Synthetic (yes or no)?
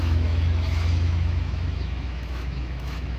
yes